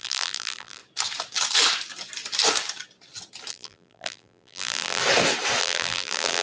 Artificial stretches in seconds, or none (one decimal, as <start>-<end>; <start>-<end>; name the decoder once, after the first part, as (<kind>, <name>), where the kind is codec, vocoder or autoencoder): 0.0-0.8 (vocoder, BigVGAN v2); 3.5-5.0; 5.6-6.4